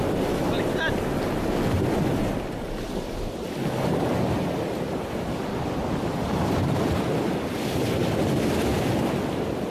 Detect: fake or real real